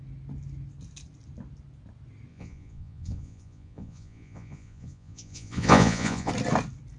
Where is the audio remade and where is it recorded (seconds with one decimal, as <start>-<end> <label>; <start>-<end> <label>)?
0.0-2.3 recorded; 2.3-6.3 remade; 6.3-7.0 recorded